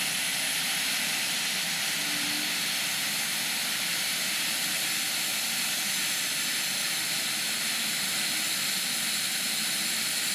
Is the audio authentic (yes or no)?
yes